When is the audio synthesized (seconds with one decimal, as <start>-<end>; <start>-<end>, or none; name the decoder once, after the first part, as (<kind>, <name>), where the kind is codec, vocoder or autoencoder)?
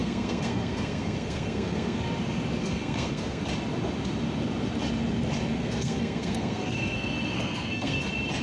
0.0-2.0 (codec, SNAC); 2.6-3.4; 5.6-8.0